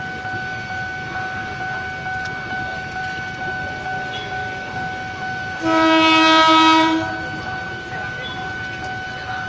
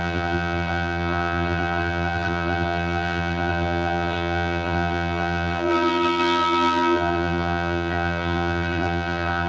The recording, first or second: first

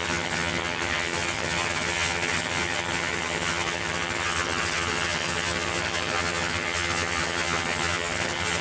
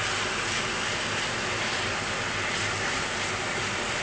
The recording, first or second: second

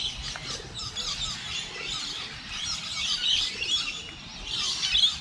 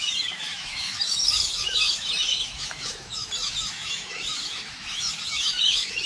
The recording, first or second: first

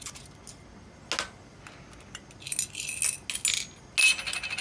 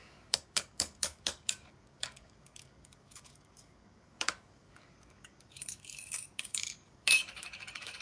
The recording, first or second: first